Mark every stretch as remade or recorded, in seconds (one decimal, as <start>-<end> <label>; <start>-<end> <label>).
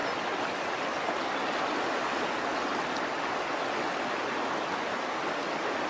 0.0-5.9 recorded